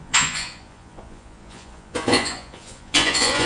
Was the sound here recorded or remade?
remade